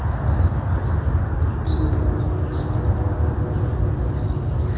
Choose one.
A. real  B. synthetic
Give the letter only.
A